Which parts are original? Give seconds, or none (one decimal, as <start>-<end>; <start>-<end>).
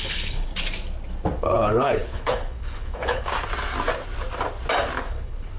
0.5-1.4; 3.3-5.1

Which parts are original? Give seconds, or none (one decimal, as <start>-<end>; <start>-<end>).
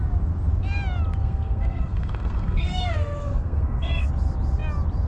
0.0-1.2; 4.1-5.1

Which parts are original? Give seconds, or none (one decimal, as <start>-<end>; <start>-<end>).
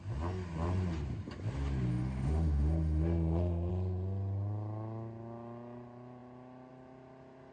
0.0-1.9; 3.7-7.5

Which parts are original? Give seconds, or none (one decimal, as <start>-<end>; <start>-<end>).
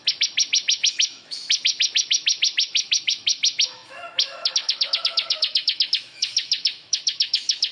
none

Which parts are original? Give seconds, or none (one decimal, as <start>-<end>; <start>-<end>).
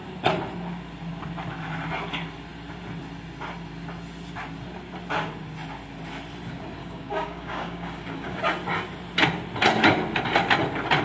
0.0-6.8; 8.4-11.0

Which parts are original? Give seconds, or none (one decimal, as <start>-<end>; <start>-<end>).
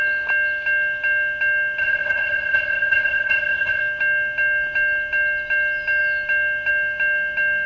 0.0-1.8; 3.8-7.7